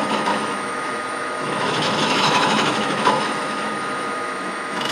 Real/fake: fake